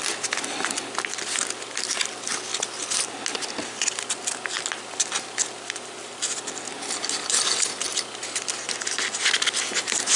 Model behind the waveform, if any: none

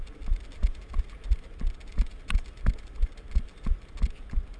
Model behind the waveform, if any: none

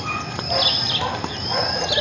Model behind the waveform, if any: none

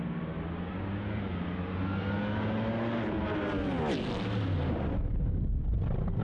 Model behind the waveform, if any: none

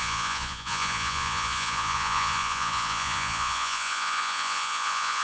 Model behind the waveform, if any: vocoder, Vocos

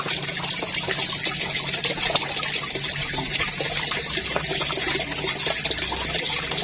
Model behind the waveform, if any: none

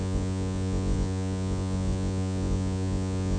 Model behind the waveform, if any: vocoder, Vocos